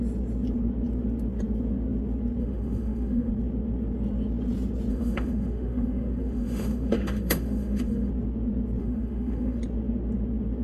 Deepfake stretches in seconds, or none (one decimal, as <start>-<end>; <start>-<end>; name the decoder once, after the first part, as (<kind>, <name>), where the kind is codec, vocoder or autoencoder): 2.4-3.3 (autoencoder, DAC-VAE); 4.9-8.1; 8.8-9.6